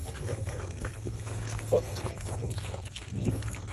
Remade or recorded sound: remade